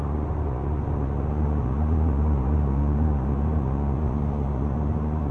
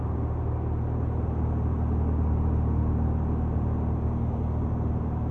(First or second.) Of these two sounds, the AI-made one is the first